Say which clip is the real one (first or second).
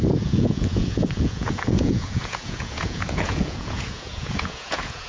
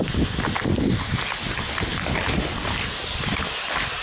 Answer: second